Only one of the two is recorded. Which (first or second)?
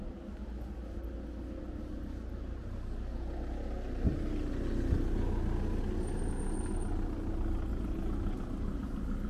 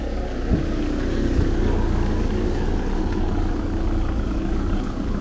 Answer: first